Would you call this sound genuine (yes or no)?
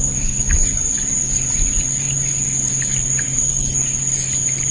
yes